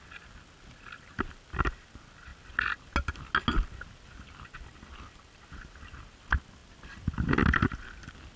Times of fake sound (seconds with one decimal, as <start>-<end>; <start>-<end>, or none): none